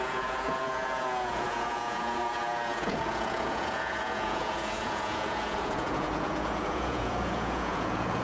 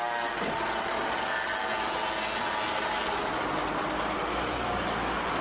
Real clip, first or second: second